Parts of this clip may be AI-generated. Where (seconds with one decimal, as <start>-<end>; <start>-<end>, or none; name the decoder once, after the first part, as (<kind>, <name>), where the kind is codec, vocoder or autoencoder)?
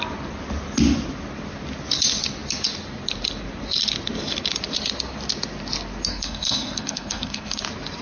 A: 6.1-7.6 (codec, SNAC)